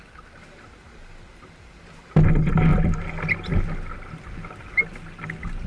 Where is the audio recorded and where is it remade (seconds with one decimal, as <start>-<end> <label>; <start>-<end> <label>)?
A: 0.0-5.7 recorded